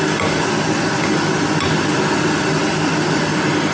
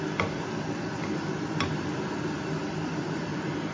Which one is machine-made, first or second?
second